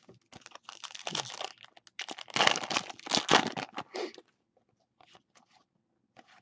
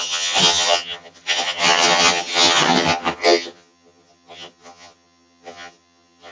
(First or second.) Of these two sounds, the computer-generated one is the second